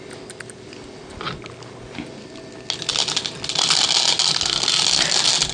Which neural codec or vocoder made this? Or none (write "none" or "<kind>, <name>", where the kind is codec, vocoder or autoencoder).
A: none